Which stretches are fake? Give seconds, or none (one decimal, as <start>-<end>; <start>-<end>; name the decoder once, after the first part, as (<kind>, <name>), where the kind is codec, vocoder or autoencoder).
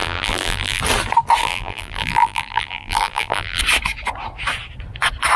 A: 0.0-0.8 (vocoder, BigVGAN v2); 1.4-3.6